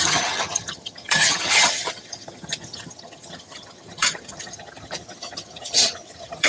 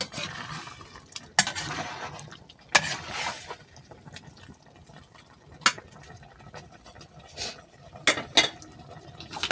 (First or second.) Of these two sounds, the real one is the second